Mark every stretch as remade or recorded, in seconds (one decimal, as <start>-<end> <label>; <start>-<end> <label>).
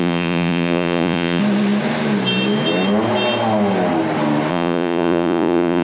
0.0-1.4 remade; 1.4-4.5 recorded; 4.5-5.8 remade